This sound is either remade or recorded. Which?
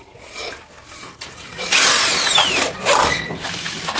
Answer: recorded